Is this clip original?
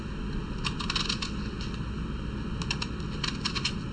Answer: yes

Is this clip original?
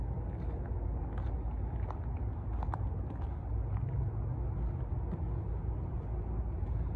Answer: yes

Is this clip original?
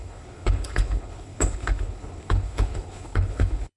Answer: no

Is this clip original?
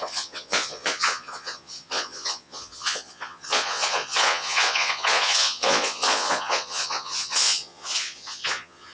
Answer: no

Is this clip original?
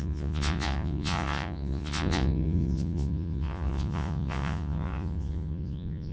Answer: no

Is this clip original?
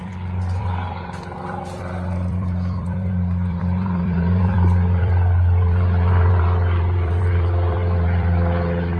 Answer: no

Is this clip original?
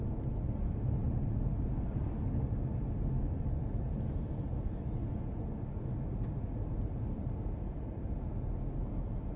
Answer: yes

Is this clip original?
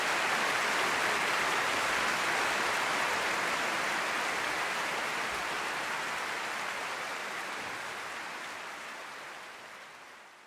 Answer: yes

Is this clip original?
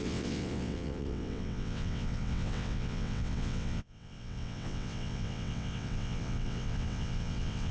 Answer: no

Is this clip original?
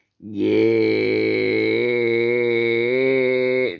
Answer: yes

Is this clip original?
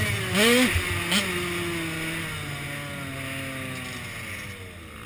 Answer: yes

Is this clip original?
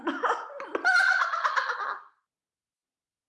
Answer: yes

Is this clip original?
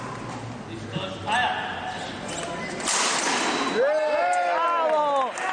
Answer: yes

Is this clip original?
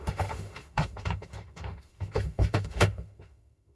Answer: no